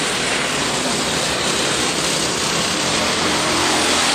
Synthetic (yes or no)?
yes